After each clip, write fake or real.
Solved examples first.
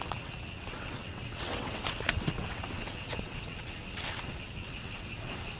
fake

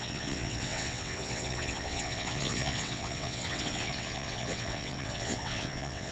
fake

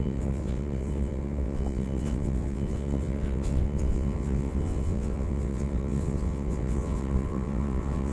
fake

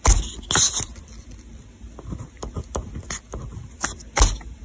real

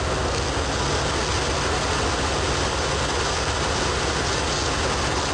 real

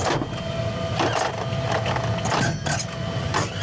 real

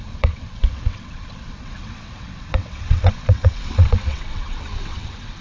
fake